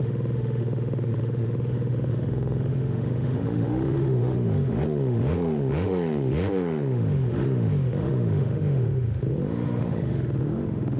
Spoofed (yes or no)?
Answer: yes